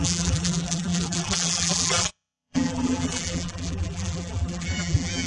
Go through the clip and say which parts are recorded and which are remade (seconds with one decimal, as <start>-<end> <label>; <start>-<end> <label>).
0.0-5.3 remade